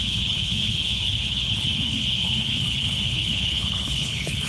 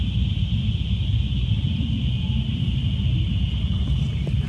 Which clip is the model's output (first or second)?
first